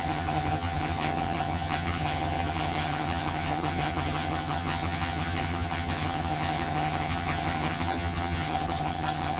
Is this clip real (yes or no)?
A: no